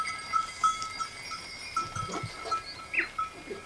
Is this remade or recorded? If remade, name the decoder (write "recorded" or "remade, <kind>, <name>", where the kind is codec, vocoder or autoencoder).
recorded